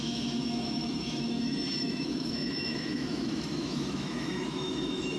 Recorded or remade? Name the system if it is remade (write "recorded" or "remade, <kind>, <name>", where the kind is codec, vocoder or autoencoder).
remade, autoencoder, DAC-VAE